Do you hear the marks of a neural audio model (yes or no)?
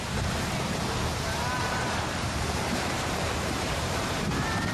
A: yes